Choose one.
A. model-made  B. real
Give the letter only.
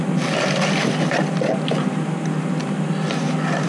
B